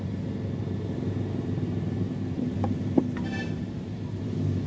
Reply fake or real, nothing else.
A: real